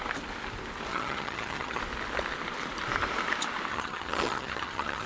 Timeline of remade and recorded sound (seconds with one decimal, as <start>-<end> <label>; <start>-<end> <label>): 0.0-0.9 recorded; 0.9-1.8 remade; 1.8-3.7 recorded; 3.7-5.1 remade